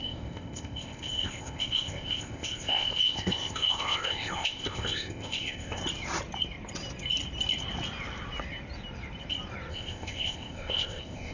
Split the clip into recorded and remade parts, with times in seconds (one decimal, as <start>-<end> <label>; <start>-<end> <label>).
0.0-5.8 remade; 5.8-9.7 recorded; 9.7-11.3 remade